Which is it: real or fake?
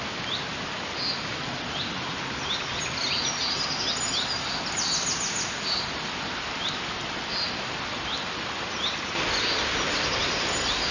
real